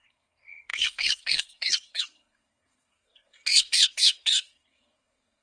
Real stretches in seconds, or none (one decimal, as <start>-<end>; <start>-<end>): none